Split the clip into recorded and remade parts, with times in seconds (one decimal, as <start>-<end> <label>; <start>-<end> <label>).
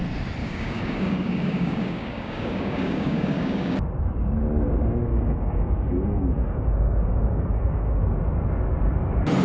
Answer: 0.0-0.4 recorded; 0.4-3.8 remade; 3.8-5.1 recorded; 5.1-8.0 remade; 8.0-9.4 recorded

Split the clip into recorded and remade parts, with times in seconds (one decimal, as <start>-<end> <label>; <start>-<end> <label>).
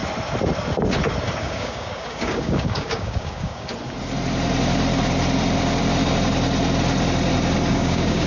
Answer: 0.0-1.4 recorded; 1.4-3.7 remade; 3.7-7.7 recorded; 7.7-8.3 remade